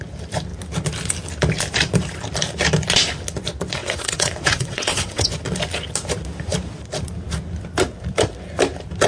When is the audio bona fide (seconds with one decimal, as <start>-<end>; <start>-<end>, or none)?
0.0-3.8; 5.3-9.1